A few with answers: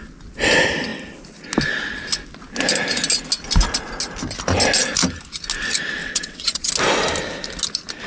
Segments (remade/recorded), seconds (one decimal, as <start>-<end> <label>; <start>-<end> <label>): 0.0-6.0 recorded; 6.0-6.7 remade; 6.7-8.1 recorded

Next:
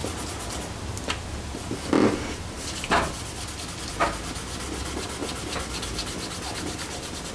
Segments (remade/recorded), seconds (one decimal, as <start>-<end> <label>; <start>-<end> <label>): 0.0-7.3 recorded

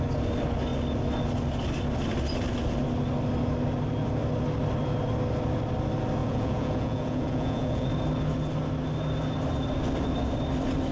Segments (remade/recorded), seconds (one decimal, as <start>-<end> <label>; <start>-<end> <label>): 0.0-6.2 recorded; 6.2-7.9 remade; 7.9-10.9 recorded

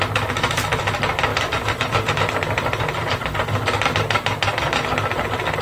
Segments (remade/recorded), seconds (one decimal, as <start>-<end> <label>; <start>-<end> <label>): 0.0-1.3 recorded; 1.3-2.1 remade; 2.1-5.6 recorded

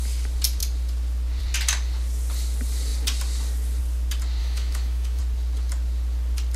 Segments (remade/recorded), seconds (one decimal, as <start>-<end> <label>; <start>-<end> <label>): 0.0-4.4 recorded; 4.4-5.2 remade; 5.2-6.6 recorded

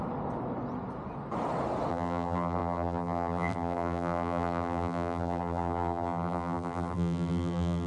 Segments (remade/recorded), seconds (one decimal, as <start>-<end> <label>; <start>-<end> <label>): 0.0-1.9 recorded; 1.9-7.9 remade

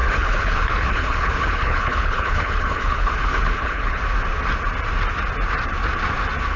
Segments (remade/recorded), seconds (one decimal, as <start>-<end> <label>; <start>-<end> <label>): 0.0-4.0 remade; 4.0-6.6 recorded

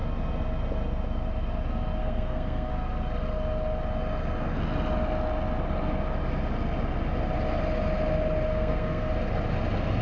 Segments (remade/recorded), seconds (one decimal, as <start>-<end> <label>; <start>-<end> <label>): 0.0-2.0 recorded; 2.0-2.7 remade; 2.7-8.5 recorded; 8.5-9.1 remade; 9.1-10.0 recorded